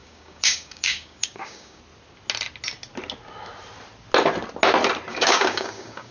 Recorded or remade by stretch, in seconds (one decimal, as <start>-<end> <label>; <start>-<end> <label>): 0.0-1.8 remade; 1.8-5.1 recorded; 5.1-6.1 remade